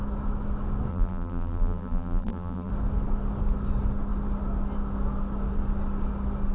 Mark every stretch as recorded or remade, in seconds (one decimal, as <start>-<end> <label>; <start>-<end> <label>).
0.0-0.9 recorded; 0.9-2.7 remade; 2.7-6.5 recorded